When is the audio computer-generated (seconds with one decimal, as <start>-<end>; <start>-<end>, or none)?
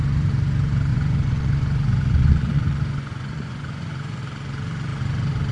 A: 0.9-4.2